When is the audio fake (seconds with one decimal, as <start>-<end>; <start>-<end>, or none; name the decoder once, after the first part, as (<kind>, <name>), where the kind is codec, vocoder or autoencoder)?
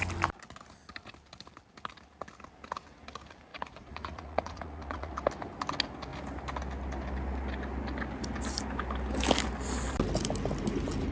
3.5-5.1 (vocoder, Vocos)